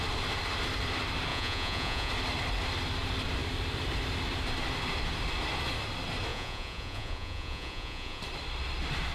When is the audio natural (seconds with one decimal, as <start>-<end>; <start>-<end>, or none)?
0.0-1.3; 2.1-6.3; 8.2-9.1